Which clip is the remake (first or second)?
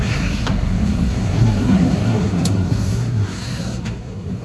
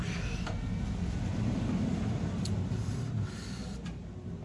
first